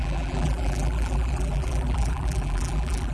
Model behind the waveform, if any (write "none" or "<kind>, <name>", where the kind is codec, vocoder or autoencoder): vocoder, BigVGAN v2